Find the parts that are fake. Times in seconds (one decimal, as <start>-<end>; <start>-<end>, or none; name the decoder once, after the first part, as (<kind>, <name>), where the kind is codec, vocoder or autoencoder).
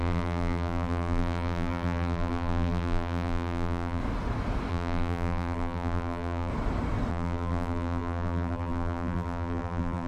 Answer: 0.0-4.0 (vocoder, BigVGAN v2); 4.7-6.5; 7.1-10.1